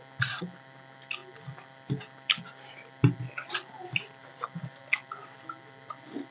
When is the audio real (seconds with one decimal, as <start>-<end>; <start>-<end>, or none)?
0.0-6.3